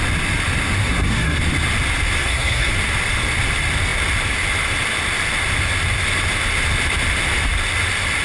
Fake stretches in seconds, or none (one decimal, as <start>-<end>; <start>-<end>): 0.8-1.4; 2.2-2.7